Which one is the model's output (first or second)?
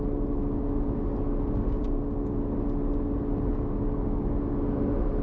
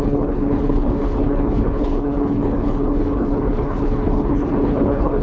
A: second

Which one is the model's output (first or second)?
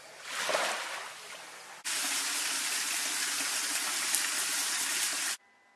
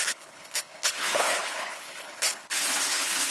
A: second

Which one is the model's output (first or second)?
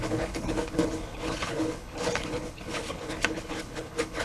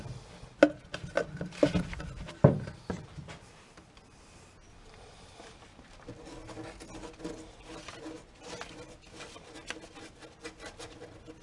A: first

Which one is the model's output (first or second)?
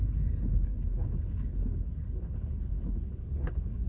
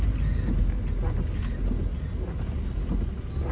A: first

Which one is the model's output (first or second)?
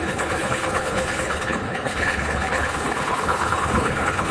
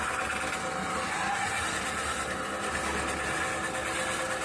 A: first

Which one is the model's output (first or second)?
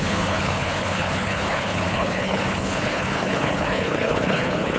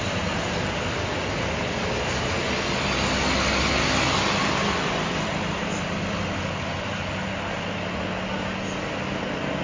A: first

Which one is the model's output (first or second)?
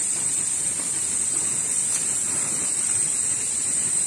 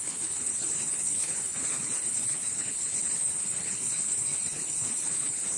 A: second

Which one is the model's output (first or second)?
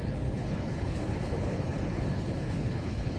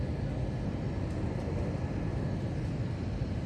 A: first